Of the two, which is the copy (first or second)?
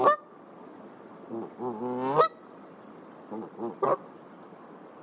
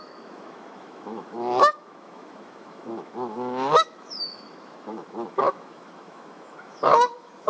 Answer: second